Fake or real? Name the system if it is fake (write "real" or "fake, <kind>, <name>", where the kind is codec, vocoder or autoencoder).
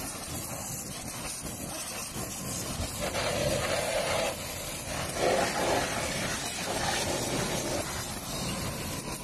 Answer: real